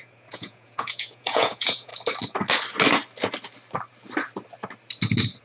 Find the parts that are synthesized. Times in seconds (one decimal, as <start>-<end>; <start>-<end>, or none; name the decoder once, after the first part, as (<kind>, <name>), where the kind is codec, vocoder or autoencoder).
0.0-1.9 (vocoder, Vocos)